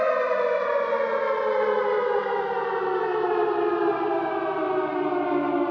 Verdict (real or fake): real